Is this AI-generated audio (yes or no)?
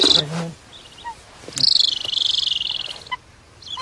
no